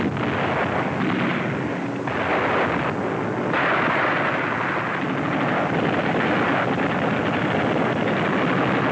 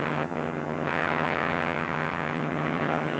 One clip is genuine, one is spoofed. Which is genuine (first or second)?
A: first